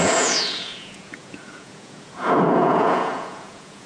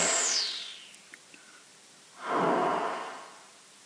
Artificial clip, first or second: first